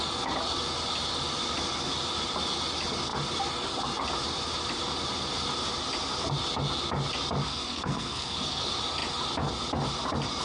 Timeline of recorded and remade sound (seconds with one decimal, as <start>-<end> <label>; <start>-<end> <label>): 0.0-7.4 recorded; 7.4-8.6 remade; 8.6-10.4 recorded